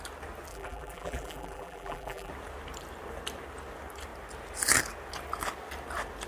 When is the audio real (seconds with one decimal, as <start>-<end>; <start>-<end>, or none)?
0.0-0.5; 2.3-6.3